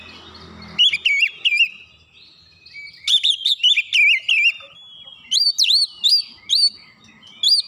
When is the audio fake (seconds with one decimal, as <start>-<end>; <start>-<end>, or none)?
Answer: none